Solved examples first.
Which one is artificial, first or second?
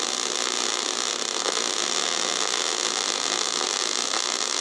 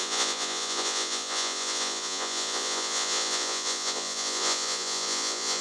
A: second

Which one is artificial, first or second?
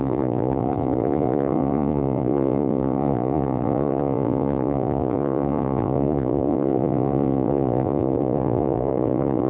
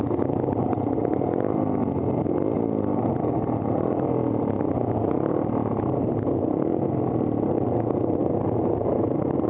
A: first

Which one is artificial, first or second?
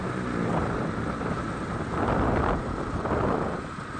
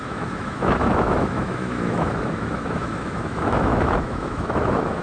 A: second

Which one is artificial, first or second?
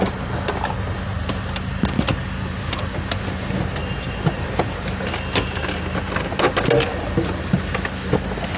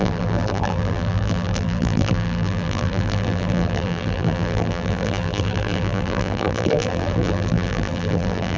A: second